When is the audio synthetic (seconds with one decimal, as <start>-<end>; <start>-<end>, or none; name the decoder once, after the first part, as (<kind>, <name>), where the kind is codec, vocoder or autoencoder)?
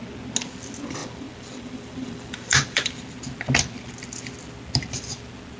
1.0-2.9 (vocoder, BigVGAN v2)